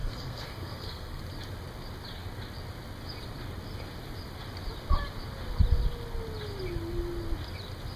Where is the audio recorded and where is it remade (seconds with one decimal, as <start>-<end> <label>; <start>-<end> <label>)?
0.0-1.2 remade; 1.2-8.0 recorded

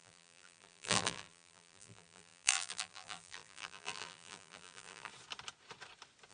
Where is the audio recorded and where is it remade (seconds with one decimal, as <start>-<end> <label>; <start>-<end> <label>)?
0.0-5.1 remade; 5.1-6.3 recorded

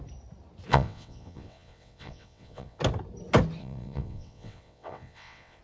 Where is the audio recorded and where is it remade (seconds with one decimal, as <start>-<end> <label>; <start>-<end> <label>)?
0.0-0.7 recorded; 0.7-2.8 remade; 2.8-3.6 recorded; 3.6-5.6 remade

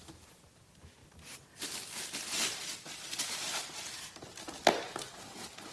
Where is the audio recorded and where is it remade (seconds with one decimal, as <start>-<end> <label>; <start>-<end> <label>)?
0.0-5.7 recorded

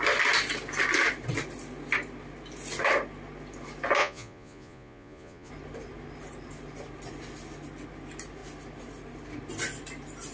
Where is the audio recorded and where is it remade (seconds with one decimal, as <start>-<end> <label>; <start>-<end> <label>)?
0.0-4.0 recorded; 4.0-5.5 remade; 5.5-10.3 recorded

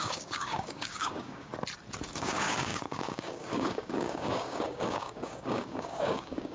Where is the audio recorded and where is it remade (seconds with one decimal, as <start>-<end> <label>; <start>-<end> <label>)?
0.0-1.5 remade; 1.5-2.2 recorded; 2.2-6.5 remade

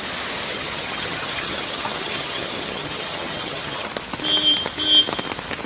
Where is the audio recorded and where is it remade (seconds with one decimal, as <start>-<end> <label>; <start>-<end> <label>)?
0.0-0.5 recorded; 0.5-3.9 remade; 3.9-5.7 recorded

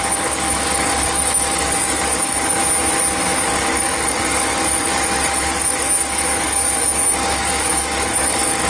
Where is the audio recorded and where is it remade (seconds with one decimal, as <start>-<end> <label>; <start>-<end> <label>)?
0.0-2.6 remade; 2.6-3.5 recorded; 3.5-8.7 remade